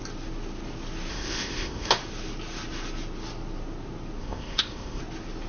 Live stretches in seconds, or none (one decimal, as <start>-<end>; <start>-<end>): 0.0-1.1; 1.9-4.2; 5.0-5.5